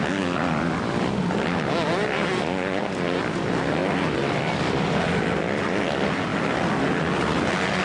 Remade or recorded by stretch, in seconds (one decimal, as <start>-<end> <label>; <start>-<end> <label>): 0.0-7.8 recorded